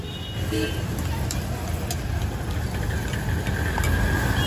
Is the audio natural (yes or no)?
yes